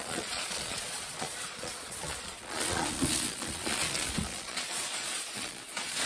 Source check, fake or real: fake